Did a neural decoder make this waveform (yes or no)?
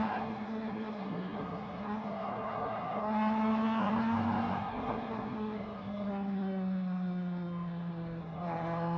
yes